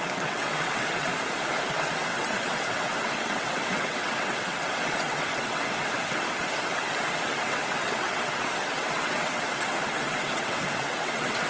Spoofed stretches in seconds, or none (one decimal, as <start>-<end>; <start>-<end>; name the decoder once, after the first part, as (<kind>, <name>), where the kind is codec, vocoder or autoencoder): 0.0-1.1 (vocoder, WaveNeXt); 1.7-11.5